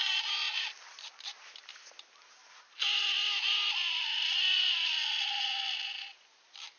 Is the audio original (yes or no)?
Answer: yes